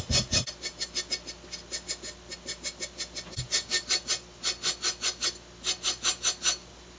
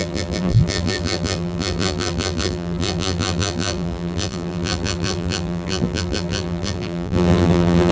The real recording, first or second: first